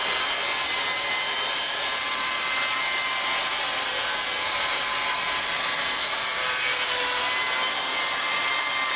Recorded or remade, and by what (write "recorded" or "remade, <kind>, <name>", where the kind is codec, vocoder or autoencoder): recorded